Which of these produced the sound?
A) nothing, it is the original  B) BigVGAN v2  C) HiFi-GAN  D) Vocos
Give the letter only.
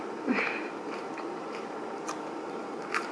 B